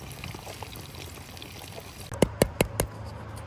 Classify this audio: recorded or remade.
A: recorded